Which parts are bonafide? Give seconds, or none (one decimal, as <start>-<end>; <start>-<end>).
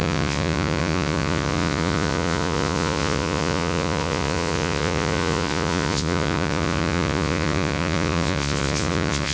none